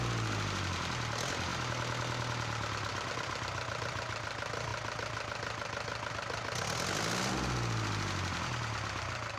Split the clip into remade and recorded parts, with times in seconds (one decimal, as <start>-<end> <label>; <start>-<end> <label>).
0.0-9.4 recorded